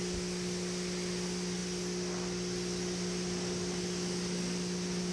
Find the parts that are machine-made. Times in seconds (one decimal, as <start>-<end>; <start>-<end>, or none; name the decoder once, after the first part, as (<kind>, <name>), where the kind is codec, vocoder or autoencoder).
none